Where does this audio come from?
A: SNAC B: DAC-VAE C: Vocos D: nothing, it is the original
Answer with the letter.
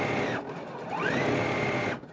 D